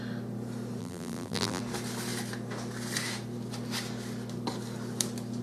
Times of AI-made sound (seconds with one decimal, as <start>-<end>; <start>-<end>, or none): 0.8-1.6